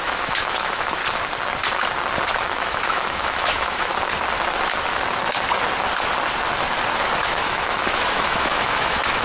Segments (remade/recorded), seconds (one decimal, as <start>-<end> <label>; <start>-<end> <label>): 0.0-1.0 remade; 1.0-2.3 recorded; 2.3-3.9 remade; 3.9-7.2 recorded; 7.2-9.2 remade